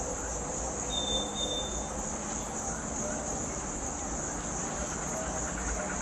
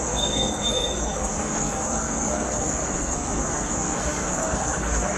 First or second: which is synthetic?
second